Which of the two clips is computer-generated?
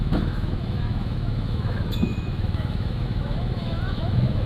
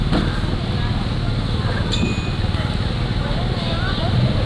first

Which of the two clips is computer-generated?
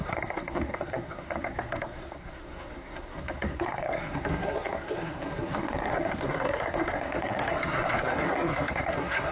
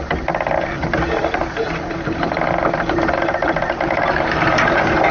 first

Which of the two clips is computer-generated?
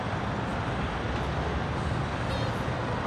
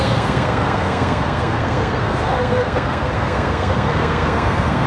second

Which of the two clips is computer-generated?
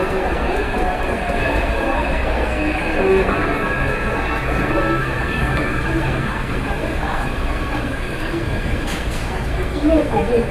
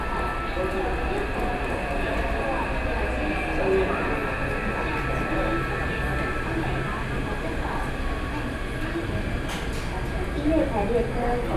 first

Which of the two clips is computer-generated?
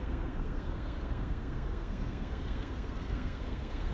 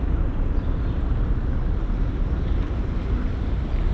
first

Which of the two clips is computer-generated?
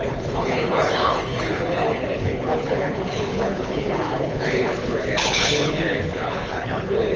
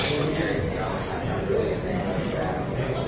first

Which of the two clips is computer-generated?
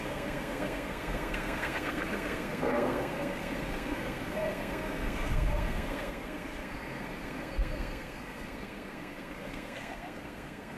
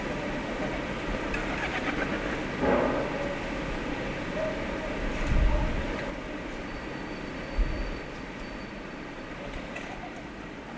first